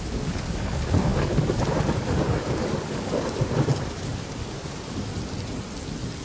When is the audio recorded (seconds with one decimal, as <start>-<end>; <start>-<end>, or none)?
5.1-6.2

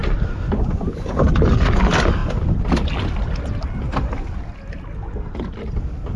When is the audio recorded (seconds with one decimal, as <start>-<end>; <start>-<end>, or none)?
0.0-6.2

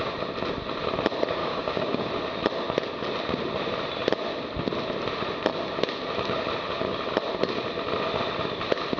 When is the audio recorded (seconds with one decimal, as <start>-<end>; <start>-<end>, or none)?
0.0-1.4; 2.1-9.0

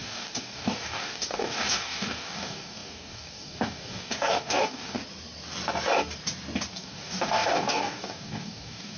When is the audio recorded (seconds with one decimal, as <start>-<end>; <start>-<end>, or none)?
5.0-6.7

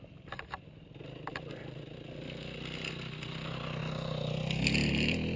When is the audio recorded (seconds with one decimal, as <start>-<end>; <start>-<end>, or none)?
0.0-5.4

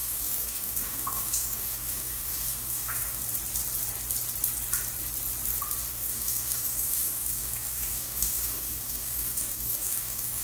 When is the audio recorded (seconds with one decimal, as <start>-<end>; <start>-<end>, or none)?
3.2-5.9

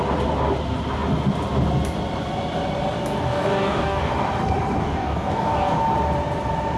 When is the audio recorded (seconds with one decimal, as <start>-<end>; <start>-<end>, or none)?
0.0-3.3; 4.1-4.8; 5.8-6.8

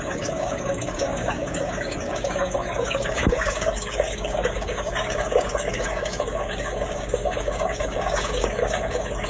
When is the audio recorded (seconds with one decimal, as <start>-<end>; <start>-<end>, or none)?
none